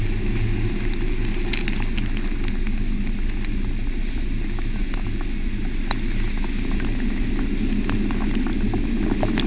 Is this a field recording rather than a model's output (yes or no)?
yes